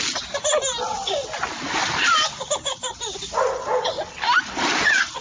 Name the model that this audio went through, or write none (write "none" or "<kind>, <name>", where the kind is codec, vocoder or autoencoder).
none